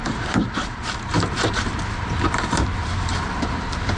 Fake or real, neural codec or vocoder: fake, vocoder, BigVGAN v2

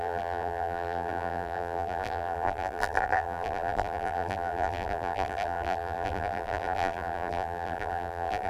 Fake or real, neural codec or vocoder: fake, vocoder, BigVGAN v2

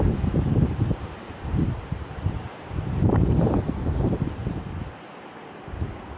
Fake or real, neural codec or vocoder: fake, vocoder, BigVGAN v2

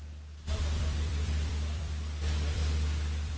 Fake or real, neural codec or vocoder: fake, vocoder, BigVGAN v2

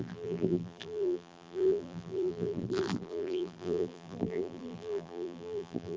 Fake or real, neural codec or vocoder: fake, vocoder, BigVGAN v2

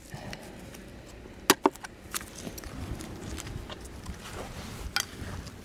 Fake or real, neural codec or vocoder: real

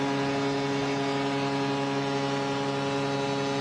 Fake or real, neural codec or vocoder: real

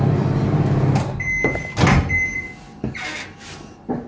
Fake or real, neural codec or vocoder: real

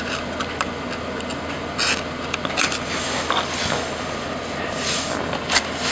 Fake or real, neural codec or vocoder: real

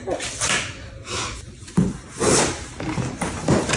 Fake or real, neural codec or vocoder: real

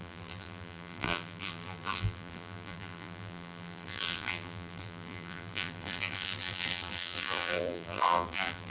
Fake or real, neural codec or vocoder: fake, vocoder, BigVGAN v2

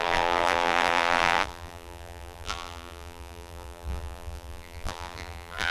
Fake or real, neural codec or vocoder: fake, vocoder, BigVGAN v2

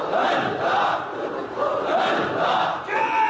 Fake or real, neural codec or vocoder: fake, vocoder, BigVGAN v2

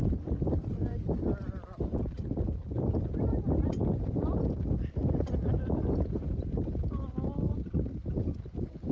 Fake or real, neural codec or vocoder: real